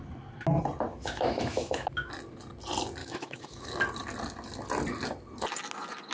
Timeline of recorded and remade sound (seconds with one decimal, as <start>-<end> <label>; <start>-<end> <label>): 0.0-0.9 recorded; 0.9-2.1 remade; 2.1-3.0 recorded; 3.0-3.7 remade; 3.7-6.1 recorded